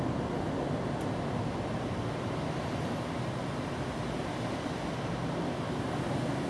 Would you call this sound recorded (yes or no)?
yes